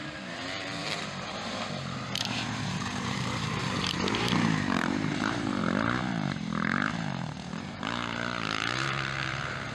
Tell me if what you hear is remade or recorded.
remade